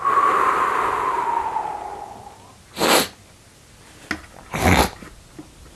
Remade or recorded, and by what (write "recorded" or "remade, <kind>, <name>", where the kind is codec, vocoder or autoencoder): recorded